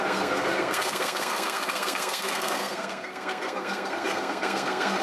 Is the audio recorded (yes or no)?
no